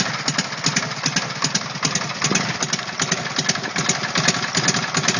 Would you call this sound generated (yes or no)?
no